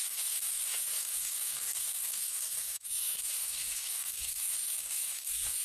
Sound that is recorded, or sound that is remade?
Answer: remade